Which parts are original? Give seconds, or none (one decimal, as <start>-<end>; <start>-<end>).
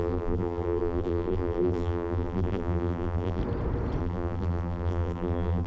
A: 3.4-4.0